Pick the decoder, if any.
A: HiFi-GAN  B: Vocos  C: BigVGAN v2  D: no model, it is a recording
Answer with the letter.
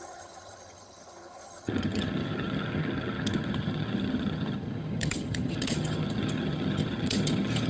A